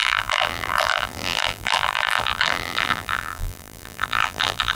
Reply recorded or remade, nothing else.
remade